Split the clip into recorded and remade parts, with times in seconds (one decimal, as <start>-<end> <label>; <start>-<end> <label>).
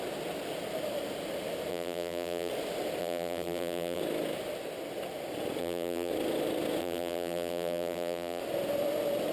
0.0-1.7 recorded; 1.7-2.5 remade; 2.5-3.0 recorded; 3.0-4.0 remade; 4.0-5.6 recorded; 5.6-6.1 remade; 6.1-6.8 recorded; 6.8-8.4 remade; 8.4-9.3 recorded